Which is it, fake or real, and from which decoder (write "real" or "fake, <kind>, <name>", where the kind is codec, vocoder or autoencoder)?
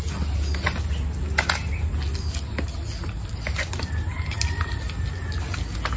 real